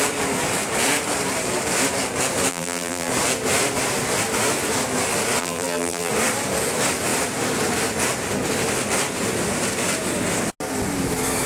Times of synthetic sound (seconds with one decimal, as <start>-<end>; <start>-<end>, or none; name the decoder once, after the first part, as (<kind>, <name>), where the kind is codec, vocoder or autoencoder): 2.5-3.1 (vocoder, BigVGAN v2); 5.4-6.1